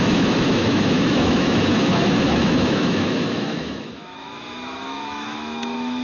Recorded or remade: remade